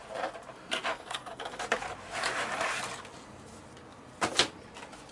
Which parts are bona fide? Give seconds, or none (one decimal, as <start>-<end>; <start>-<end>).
0.0-0.9; 1.6-5.1